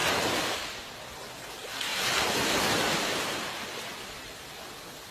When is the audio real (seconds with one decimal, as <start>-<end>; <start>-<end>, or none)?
0.8-1.9